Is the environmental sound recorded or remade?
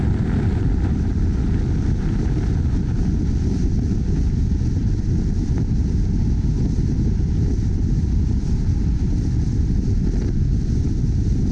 recorded